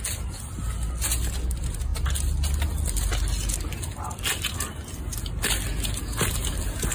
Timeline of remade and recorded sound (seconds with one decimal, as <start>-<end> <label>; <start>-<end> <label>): 0.0-6.9 recorded